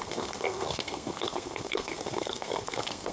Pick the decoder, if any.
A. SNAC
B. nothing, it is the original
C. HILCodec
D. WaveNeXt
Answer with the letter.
A